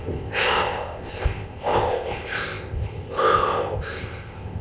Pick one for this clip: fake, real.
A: fake